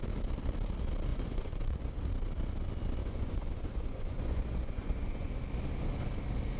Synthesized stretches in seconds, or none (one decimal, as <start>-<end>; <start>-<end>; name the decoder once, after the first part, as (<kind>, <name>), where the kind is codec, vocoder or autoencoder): 1.1-2.0 (vocoder, Vocos); 3.0-5.3